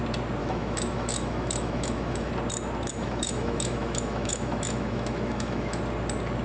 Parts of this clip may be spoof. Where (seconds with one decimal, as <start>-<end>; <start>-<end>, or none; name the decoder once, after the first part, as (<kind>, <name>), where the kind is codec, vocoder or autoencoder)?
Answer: 0.4-2.3 (autoencoder, DAC-VAE); 2.9-5.8